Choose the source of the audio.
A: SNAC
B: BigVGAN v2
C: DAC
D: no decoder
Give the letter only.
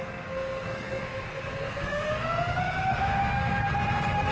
A